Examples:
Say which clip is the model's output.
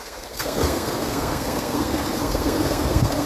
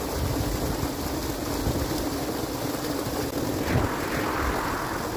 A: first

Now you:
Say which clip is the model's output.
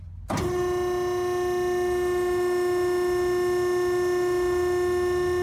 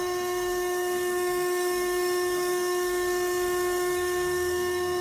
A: second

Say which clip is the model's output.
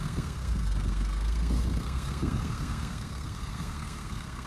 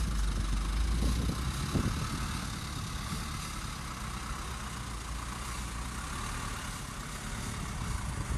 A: first